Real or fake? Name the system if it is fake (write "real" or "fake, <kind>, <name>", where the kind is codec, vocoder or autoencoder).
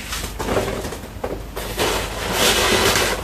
real